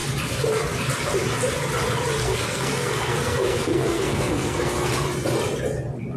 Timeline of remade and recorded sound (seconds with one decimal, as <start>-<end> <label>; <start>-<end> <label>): 0.0-2.2 recorded; 2.2-4.9 remade; 4.9-6.2 recorded